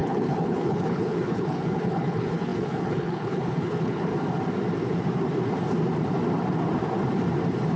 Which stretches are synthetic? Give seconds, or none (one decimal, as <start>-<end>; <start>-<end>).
0.0-4.1